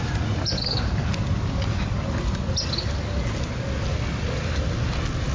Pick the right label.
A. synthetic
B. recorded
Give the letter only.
B